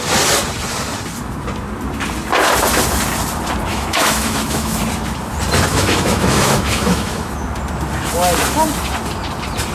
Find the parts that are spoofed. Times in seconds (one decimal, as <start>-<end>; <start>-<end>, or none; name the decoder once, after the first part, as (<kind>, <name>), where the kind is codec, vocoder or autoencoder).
3.7-4.8 (autoencoder, DAC-VAE); 5.7-7.3